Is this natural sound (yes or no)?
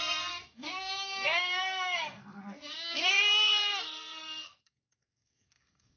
no